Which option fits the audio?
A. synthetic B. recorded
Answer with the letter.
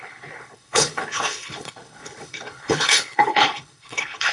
A